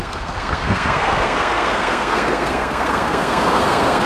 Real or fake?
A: fake